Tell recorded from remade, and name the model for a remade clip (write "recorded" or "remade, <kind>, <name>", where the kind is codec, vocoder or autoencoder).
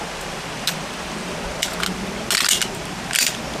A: recorded